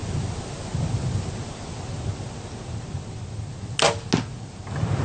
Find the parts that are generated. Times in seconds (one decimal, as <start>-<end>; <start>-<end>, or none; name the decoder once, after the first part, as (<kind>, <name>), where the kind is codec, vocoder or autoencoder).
none